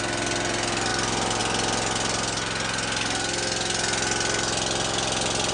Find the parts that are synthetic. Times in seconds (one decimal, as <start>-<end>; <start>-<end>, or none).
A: none